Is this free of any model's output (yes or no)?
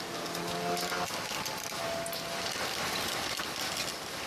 yes